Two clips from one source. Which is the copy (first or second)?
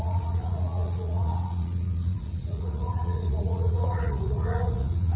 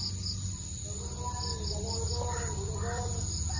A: first